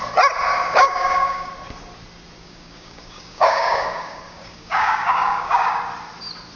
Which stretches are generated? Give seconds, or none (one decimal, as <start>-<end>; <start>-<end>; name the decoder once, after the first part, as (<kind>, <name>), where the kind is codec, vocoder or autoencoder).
0.5-1.5 (codec, DAC); 2.4-5.8